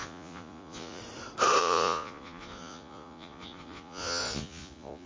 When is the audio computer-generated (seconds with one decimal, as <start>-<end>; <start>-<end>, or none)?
0.0-1.0; 1.6-5.1